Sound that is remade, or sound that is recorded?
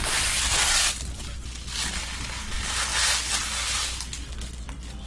recorded